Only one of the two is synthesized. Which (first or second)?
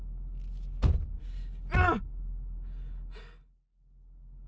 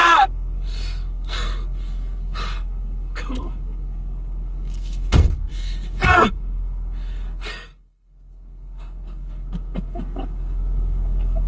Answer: second